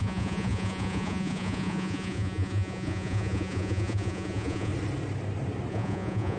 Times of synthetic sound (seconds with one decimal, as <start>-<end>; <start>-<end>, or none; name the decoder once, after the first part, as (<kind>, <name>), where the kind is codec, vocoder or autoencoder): 0.0-4.7 (vocoder, Vocos); 5.7-6.4